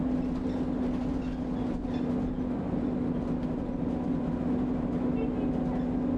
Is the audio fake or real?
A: real